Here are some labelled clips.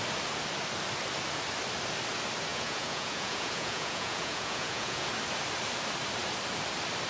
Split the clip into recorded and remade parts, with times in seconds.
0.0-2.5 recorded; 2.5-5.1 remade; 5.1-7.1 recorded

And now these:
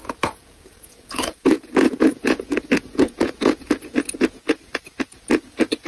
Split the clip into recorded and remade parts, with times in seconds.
0.0-5.9 remade

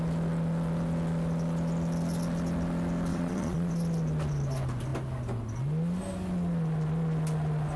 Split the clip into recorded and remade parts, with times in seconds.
0.0-3.1 recorded; 3.1-3.7 remade; 3.7-7.8 recorded

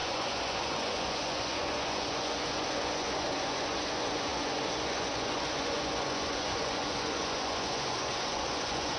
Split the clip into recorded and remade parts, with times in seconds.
0.0-9.0 remade

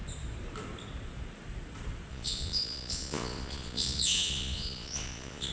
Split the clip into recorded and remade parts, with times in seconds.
0.0-2.1 recorded; 2.1-5.5 remade

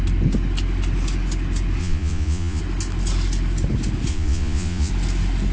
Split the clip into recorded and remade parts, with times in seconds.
0.0-1.8 recorded; 1.8-2.6 remade; 2.6-4.1 recorded; 4.1-4.9 remade; 4.9-5.5 recorded

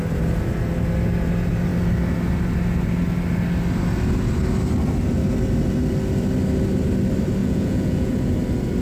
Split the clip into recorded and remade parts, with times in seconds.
0.0-7.4 recorded; 7.4-8.1 remade; 8.1-8.8 recorded